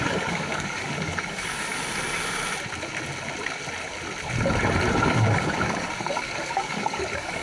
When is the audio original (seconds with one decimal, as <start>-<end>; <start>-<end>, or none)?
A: 1.7-4.9